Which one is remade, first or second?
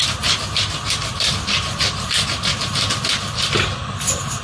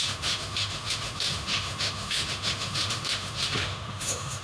second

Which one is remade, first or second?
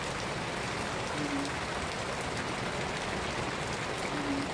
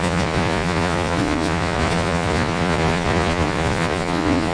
second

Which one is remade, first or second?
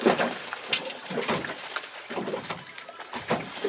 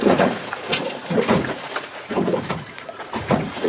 second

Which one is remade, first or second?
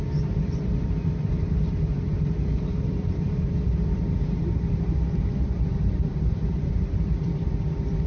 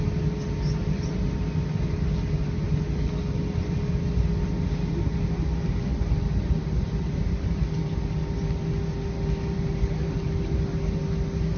first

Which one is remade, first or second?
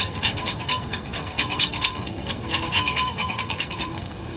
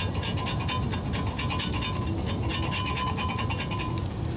first